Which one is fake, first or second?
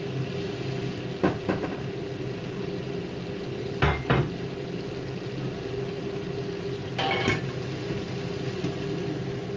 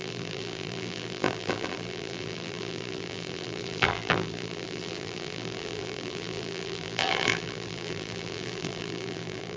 second